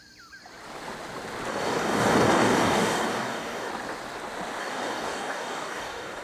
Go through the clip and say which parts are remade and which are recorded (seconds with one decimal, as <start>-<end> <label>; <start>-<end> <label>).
0.0-1.5 recorded; 1.5-3.7 remade; 3.7-4.6 recorded; 4.6-6.2 remade